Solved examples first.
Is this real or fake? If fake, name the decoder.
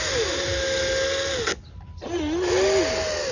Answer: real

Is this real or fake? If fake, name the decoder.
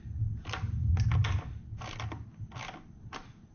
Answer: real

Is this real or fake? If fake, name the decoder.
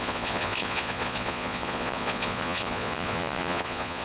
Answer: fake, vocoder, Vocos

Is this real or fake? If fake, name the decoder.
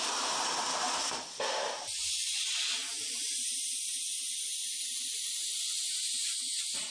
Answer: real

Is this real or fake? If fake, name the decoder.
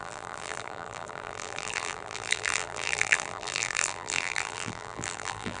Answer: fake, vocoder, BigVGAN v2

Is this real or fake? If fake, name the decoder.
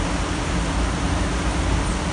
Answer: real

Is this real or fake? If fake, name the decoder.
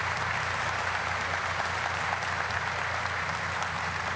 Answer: real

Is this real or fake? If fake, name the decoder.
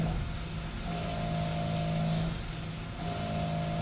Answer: real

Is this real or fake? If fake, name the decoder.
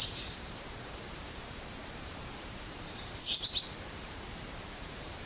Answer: fake, vocoder, BigVGAN v2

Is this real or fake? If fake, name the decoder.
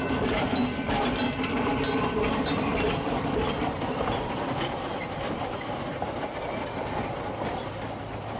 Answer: real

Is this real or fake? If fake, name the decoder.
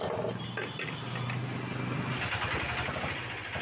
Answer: real